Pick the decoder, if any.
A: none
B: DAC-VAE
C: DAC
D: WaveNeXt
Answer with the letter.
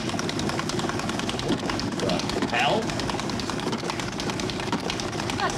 C